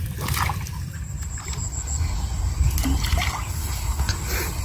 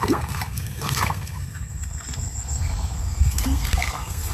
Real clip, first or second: first